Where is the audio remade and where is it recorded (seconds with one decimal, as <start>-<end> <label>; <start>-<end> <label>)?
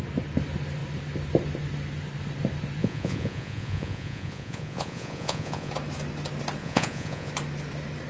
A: 0.0-2.8 recorded; 2.8-5.7 remade; 5.7-6.6 recorded; 6.6-7.3 remade; 7.3-8.1 recorded